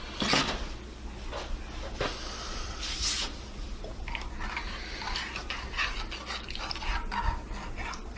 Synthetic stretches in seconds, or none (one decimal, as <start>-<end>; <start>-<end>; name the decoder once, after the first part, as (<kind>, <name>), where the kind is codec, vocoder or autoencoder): none